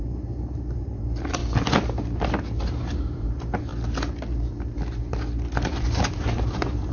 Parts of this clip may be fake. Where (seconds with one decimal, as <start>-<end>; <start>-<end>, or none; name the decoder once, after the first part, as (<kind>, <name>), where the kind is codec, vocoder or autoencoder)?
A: 0.0-1.4 (vocoder, BigVGAN v2); 2.6-3.7; 5.7-6.9